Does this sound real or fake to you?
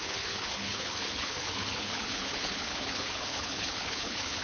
fake